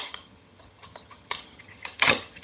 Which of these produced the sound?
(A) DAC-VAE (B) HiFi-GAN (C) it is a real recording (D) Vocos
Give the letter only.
B